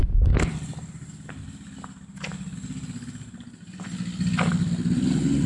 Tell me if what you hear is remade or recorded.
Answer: recorded